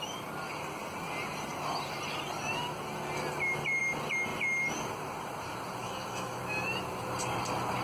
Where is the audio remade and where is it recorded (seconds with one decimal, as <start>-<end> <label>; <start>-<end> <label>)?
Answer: 0.0-5.8 recorded; 5.8-6.4 remade; 6.4-7.8 recorded